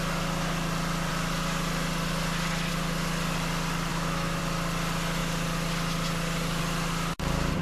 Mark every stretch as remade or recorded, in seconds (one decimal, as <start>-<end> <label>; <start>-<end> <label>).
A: 0.0-3.9 recorded; 3.9-4.4 remade; 4.4-7.6 recorded